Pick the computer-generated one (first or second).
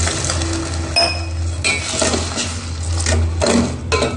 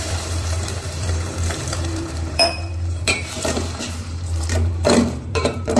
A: second